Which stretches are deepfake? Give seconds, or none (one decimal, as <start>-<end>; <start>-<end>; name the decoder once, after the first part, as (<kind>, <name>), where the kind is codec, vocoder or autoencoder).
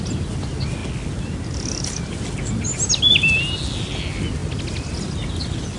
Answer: none